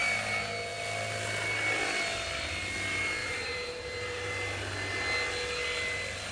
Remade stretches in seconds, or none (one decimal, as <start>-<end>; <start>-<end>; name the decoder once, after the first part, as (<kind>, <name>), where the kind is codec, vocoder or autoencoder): 3.2-4.3 (vocoder, BigVGAN v2)